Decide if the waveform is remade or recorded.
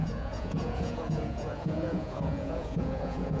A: remade